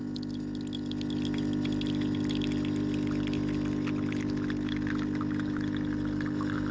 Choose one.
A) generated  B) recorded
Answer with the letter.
B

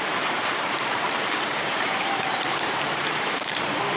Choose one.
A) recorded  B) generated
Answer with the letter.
B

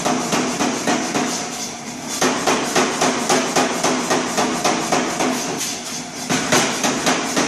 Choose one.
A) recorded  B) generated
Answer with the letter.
A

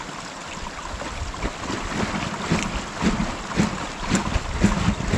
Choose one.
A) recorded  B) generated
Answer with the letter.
A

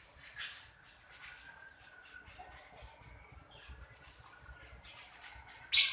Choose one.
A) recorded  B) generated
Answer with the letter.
A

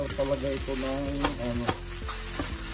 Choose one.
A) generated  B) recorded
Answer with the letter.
B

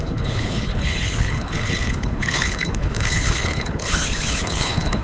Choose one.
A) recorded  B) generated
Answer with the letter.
B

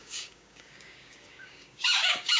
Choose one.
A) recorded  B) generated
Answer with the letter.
B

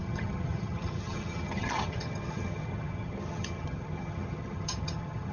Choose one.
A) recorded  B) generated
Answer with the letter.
B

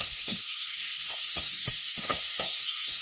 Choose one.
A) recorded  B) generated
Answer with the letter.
B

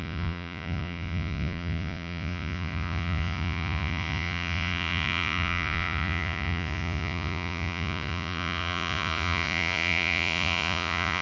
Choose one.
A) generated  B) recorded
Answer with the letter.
A